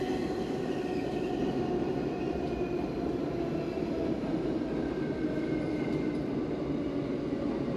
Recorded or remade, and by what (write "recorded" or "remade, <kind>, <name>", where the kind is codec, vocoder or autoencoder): recorded